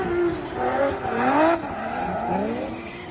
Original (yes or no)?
yes